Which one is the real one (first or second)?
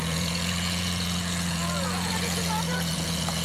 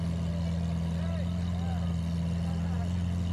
second